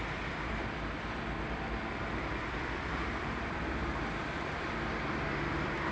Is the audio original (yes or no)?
no